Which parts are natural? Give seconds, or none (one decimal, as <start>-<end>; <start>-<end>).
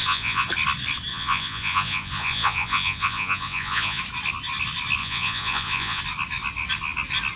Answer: 0.5-1.1; 4.0-5.0; 6.0-7.4